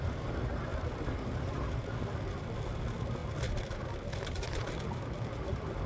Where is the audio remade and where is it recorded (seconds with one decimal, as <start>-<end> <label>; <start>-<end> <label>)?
0.0-0.7 recorded; 0.7-2.8 remade; 2.8-3.2 recorded; 3.2-3.8 remade; 3.8-4.6 recorded; 4.6-5.5 remade; 5.5-5.9 recorded